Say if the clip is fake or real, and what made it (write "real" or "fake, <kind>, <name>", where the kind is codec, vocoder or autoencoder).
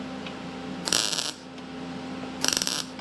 real